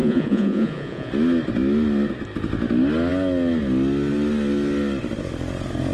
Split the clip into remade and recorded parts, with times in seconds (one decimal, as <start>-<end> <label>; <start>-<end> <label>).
0.0-1.1 remade; 1.1-5.9 recorded